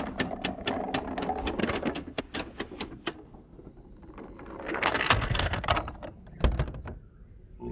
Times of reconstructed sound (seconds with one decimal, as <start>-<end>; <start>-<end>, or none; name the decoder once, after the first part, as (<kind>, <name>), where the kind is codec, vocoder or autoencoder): 1.6-2.2 (codec, SNAC); 3.0-3.7; 4.7-5.7

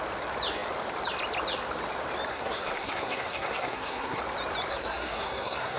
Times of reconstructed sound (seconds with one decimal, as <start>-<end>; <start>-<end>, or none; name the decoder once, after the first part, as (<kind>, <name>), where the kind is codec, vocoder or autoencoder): 2.3-4.2 (codec, SNAC); 4.7-5.8